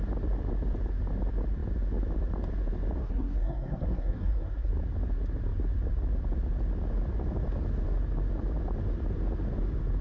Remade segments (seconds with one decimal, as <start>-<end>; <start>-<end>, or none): 3.0-4.7